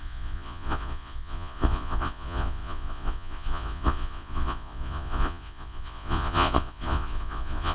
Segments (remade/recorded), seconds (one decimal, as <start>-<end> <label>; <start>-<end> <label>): 0.0-7.7 remade